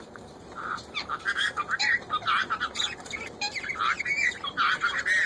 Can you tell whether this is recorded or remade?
remade